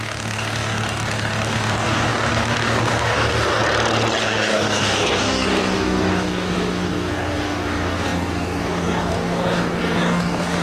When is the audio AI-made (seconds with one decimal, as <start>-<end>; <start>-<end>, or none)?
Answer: 0.0-3.6; 4.2-10.6